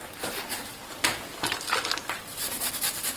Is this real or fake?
real